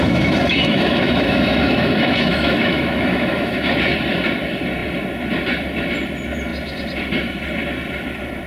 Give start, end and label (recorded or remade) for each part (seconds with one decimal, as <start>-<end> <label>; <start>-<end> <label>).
0.0-3.7 remade; 3.7-8.5 recorded